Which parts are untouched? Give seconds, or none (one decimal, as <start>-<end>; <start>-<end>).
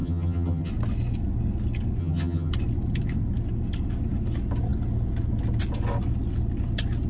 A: 0.7-2.0; 2.5-7.1